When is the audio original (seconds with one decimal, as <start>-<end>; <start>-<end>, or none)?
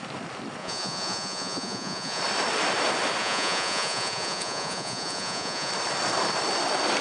0.0-0.6; 2.2-3.2; 5.7-7.0